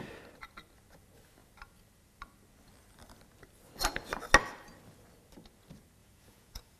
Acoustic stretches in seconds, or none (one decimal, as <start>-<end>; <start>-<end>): 0.0-6.0